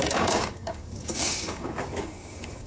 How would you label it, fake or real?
fake